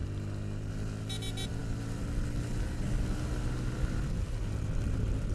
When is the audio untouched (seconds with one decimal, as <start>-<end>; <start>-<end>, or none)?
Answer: 0.0-5.3